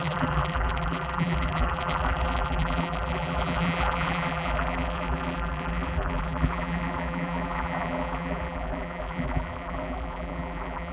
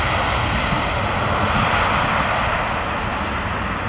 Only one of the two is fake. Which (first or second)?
first